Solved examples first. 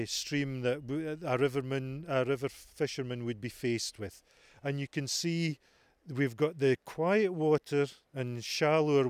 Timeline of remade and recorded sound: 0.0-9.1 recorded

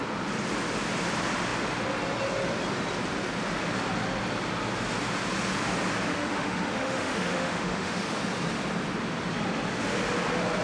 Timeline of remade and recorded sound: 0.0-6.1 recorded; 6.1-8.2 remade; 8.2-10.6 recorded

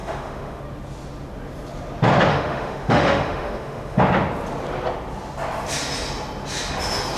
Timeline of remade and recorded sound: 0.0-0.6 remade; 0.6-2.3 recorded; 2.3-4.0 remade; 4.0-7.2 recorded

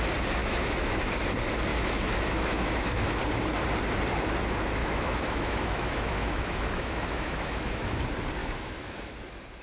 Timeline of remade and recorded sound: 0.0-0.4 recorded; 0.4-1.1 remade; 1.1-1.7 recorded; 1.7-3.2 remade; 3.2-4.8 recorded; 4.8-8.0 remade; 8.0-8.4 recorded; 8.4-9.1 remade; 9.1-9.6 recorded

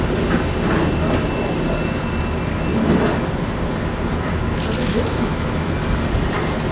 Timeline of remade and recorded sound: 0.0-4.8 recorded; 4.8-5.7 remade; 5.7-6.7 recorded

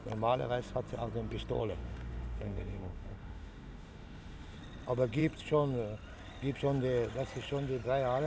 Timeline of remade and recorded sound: 0.0-1.6 recorded; 1.6-4.6 remade; 4.6-8.3 recorded

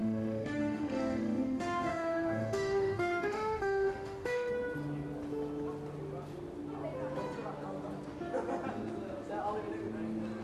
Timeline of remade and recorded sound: 0.0-4.5 remade; 4.5-10.4 recorded